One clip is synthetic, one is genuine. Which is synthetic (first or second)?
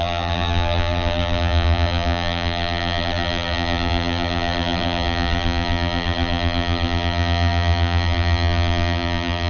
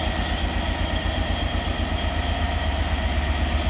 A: first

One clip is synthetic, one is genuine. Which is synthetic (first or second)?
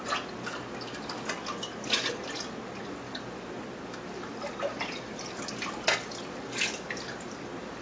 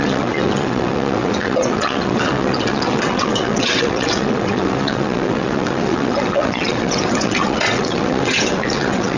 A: second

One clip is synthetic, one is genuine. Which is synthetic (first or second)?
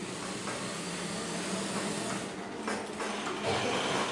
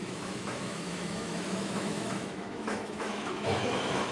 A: second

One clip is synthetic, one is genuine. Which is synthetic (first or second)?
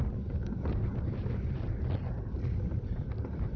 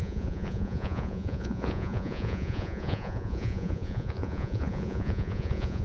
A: second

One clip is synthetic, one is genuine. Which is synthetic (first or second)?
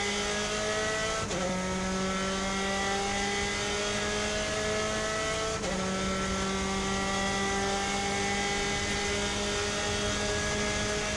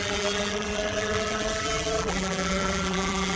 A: second